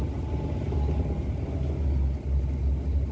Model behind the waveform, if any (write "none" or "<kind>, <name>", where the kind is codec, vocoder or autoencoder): none